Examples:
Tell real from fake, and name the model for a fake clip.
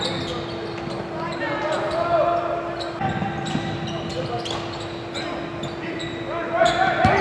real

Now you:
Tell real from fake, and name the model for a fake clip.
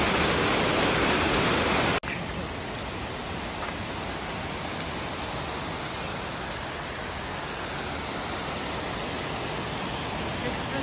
real